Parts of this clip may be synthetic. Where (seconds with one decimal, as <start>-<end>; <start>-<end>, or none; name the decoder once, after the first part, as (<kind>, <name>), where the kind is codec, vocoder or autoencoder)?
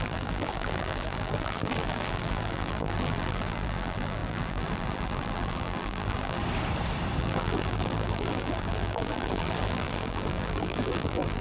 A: 0.0-6.4 (vocoder, BigVGAN v2); 7.2-11.4